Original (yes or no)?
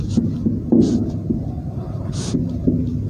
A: yes